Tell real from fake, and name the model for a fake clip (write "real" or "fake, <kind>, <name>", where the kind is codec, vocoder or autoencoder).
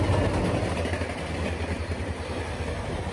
real